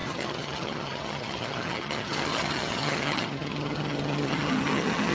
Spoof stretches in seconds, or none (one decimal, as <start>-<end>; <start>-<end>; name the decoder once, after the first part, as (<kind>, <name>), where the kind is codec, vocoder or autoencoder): 0.0-5.1 (vocoder, HiFi-GAN)